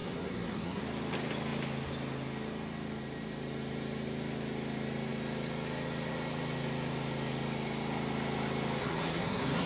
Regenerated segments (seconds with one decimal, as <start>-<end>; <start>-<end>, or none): 0.0-0.8; 8.8-9.7